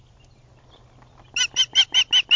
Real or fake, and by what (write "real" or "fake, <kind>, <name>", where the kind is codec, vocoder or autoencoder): real